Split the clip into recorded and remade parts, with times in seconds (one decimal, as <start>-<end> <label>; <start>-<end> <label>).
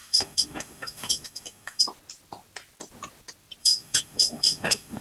0.0-1.8 remade; 1.8-3.6 recorded; 3.6-5.0 remade